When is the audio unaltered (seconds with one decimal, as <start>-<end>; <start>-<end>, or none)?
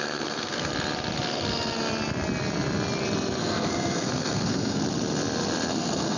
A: 0.7-3.4; 4.8-5.7